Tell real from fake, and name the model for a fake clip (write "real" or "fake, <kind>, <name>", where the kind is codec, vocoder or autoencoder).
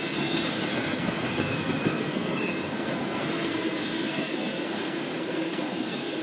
fake, codec, SNAC